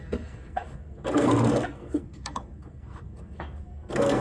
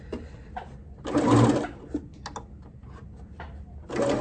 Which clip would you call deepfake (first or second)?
first